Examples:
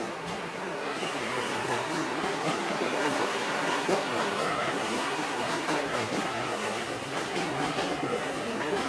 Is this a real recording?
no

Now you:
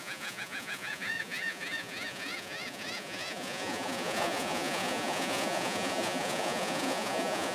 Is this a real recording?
no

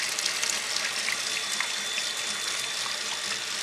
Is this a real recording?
no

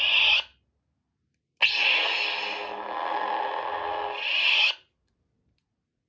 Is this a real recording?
yes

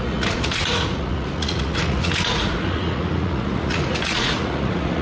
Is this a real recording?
no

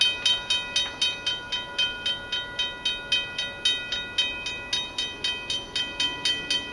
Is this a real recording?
yes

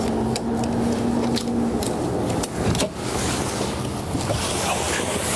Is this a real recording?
yes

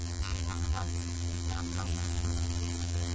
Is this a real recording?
no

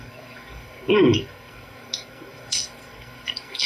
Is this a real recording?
no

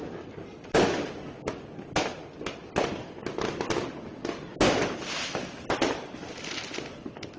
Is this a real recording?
yes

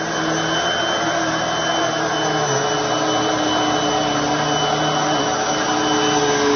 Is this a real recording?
yes